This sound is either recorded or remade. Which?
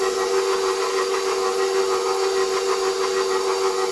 recorded